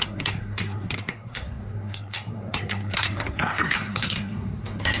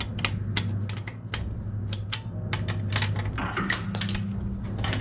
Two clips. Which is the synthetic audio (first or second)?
first